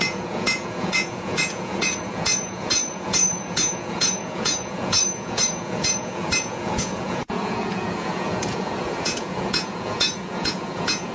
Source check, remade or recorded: remade